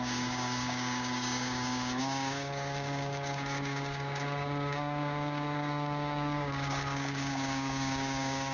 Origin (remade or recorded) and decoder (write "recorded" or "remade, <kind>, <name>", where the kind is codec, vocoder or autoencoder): remade, codec, DAC